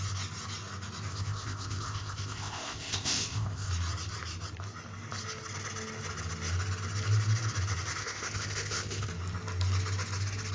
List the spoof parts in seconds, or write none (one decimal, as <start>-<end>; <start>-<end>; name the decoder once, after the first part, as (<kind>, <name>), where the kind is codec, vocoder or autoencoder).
1.1-3.7 (codec, ZipCodec); 8.0-9.1